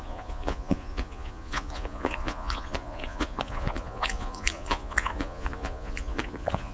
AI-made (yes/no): yes